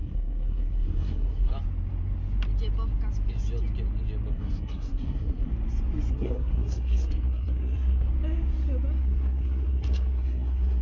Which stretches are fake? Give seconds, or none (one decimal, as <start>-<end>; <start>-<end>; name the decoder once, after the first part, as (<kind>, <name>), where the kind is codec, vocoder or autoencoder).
0.0-1.5 (codec, SNAC); 4.3-5.5; 6.1-8.1; 9.0-10.8